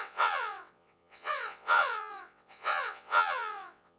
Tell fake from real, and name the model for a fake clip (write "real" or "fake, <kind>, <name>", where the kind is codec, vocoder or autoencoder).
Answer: fake, vocoder, WaveNeXt